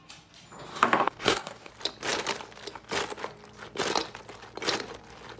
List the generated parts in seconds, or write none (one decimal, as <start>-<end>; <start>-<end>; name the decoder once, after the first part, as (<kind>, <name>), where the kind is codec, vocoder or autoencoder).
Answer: 0.7-1.7 (codec, DAC)